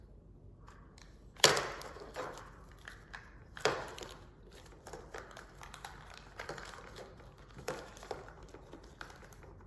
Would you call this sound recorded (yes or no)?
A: no